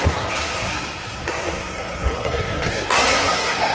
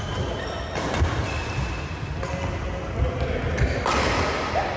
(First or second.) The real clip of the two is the second